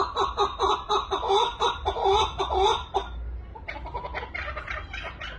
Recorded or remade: recorded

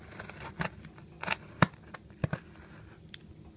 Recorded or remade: recorded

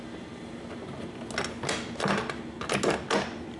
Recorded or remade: recorded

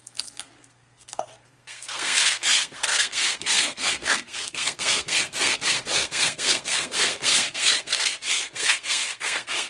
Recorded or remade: remade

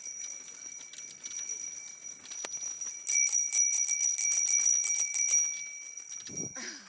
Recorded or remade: recorded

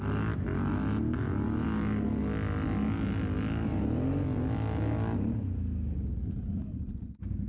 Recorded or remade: recorded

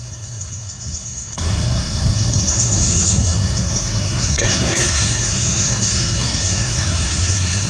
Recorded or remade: remade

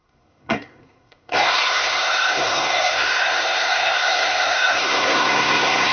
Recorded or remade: remade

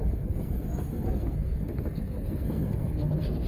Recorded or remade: remade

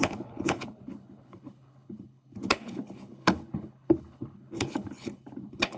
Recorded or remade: remade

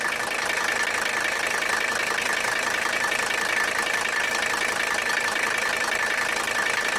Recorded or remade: recorded